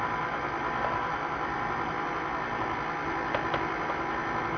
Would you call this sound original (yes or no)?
yes